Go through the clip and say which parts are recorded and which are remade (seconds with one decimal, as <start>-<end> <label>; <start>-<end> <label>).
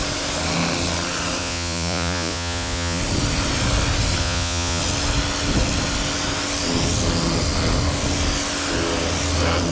0.0-1.4 recorded; 1.4-3.0 remade; 3.0-4.2 recorded; 4.2-4.8 remade; 4.8-9.7 recorded